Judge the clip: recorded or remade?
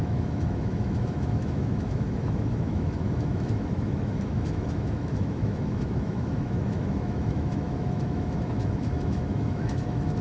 remade